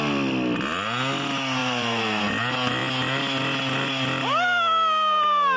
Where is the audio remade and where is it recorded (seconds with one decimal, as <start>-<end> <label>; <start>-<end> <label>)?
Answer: 0.0-1.6 recorded; 1.6-2.2 remade; 2.2-5.6 recorded